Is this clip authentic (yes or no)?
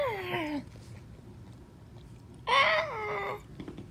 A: yes